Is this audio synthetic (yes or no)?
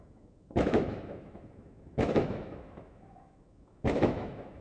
yes